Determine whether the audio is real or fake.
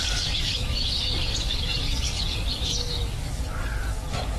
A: fake